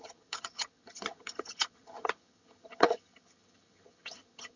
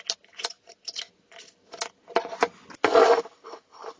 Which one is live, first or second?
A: second